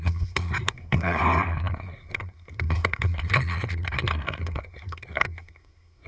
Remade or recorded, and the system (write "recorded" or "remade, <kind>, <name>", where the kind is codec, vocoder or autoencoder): remade, codec, SNAC